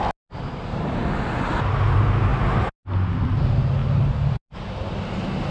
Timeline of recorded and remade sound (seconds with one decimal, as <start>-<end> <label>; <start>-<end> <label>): 0.0-5.5 recorded